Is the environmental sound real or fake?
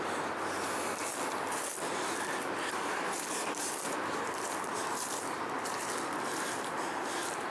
real